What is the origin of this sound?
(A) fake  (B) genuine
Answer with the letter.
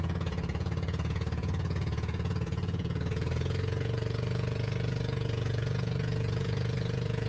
A